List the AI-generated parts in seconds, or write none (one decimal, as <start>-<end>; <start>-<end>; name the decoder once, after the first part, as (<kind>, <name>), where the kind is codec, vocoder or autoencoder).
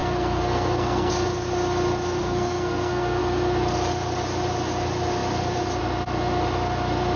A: 0.0-1.1 (codec, SNAC); 2.2-3.2